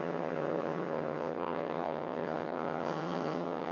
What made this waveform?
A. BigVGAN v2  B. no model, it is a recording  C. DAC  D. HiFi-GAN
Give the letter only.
D